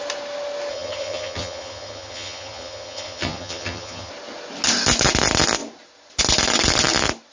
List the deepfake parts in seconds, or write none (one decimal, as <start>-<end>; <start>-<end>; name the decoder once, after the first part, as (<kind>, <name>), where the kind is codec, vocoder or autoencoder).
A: 0.7-4.1 (vocoder, HiFi-GAN)